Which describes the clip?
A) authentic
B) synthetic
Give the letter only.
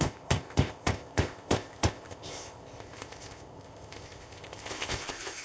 B